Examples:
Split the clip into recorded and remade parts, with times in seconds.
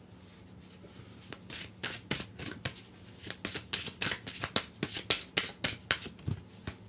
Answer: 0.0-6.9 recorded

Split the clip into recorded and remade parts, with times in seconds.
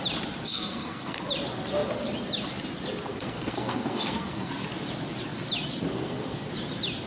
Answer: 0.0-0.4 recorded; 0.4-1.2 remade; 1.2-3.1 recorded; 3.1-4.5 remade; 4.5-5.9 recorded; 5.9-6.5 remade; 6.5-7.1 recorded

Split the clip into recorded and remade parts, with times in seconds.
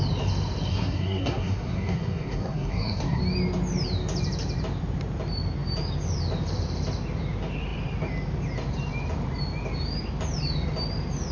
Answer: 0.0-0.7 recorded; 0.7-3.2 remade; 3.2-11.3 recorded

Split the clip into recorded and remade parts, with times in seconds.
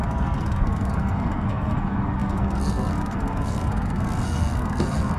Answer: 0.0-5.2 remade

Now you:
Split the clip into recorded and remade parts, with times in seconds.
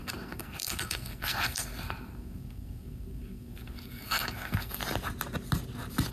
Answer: 0.0-4.8 remade; 4.8-6.1 recorded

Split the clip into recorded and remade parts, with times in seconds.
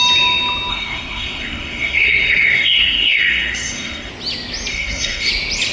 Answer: 0.0-0.7 recorded; 0.7-4.1 remade; 4.1-4.7 recorded; 4.7-5.3 remade; 5.3-5.7 recorded